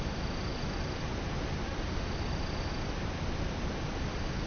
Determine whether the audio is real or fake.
real